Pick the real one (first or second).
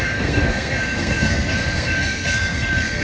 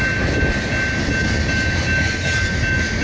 second